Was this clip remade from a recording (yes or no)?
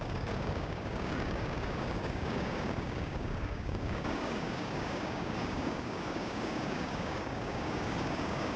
yes